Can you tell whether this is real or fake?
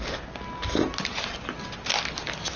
real